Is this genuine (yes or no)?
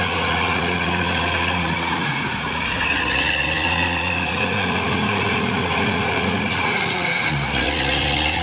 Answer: no